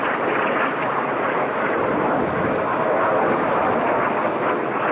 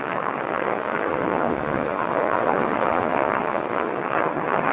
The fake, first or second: second